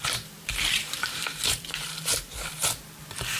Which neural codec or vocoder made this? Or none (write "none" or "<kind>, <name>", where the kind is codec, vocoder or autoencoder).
vocoder, BigVGAN v2